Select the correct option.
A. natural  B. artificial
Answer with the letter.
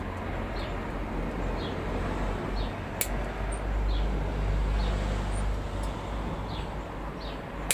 A